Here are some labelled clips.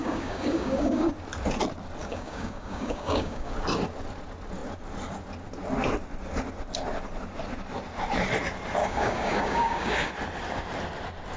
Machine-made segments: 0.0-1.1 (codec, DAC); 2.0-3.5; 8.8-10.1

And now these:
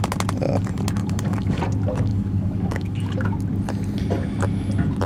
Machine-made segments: 1.0-1.6 (codec, DAC); 2.1-3.1